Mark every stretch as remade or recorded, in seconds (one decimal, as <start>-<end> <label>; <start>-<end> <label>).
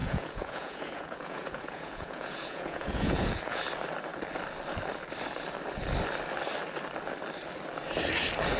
0.0-3.6 remade; 3.6-8.6 recorded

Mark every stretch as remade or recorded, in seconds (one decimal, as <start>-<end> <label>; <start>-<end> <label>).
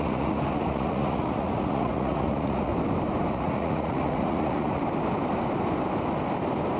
0.0-2.7 remade; 2.7-3.3 recorded; 3.3-4.8 remade; 4.8-6.8 recorded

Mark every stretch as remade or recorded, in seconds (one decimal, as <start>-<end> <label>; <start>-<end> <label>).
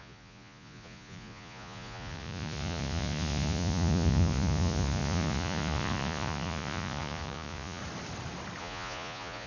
0.0-7.8 remade; 7.8-8.6 recorded; 8.6-9.5 remade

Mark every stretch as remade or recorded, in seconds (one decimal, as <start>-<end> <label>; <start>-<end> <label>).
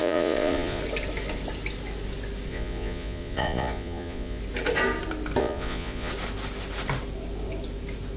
0.0-0.8 remade; 0.8-2.5 recorded; 2.5-4.4 remade; 4.4-5.4 recorded; 5.4-6.1 remade; 6.1-8.2 recorded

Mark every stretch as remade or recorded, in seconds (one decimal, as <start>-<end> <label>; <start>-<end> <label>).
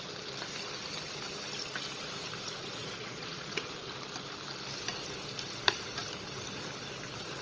0.0-2.8 recorded; 2.8-3.9 remade; 3.9-7.4 recorded